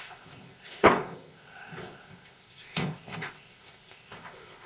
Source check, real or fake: fake